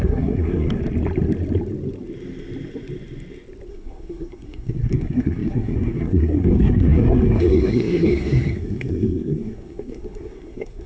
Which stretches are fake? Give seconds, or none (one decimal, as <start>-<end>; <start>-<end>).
0.0-0.8; 3.7-10.9

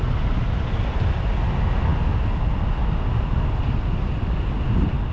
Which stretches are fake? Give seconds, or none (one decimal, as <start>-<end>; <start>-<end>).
none